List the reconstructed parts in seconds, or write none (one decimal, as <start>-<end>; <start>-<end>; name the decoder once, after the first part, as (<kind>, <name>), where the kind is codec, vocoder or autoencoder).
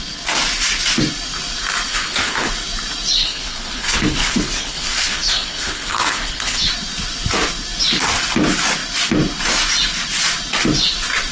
1.9-2.5 (codec, HILCodec); 3.2-6.7